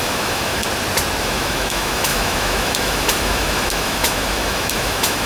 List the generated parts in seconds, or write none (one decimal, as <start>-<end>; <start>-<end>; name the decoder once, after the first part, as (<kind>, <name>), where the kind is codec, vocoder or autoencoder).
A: 0.0-0.6 (autoencoder, DAC-VAE); 1.2-5.3